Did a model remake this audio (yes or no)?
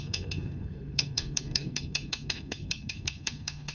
yes